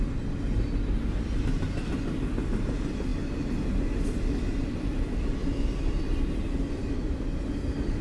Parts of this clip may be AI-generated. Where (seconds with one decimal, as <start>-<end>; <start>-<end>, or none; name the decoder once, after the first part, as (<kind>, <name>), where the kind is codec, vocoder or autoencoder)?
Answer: 3.1-8.0 (vocoder, BigVGAN v2)